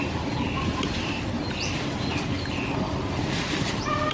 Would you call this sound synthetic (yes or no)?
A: no